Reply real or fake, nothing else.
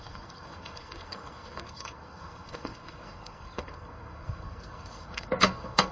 fake